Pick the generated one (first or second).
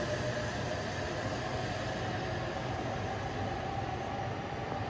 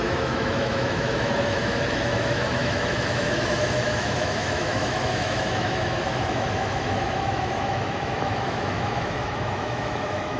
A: second